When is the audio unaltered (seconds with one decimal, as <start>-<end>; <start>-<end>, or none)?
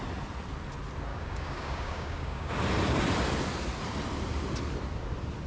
0.0-1.1; 2.5-5.5